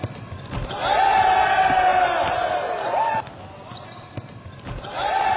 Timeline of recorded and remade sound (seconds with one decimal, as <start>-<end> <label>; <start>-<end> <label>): 0.0-5.4 recorded